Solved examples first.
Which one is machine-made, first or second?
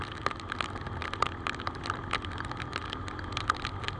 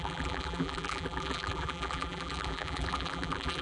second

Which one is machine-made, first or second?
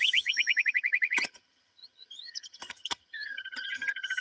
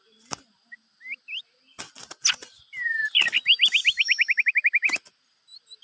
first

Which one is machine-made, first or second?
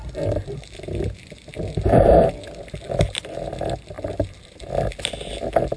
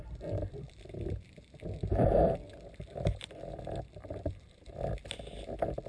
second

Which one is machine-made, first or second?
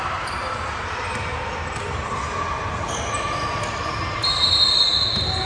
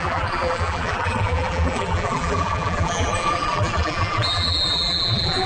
second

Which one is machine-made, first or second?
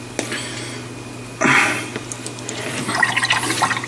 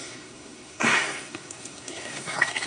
second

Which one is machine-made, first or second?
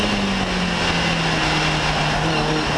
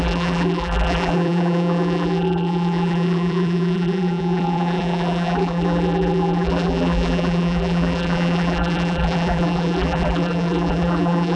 second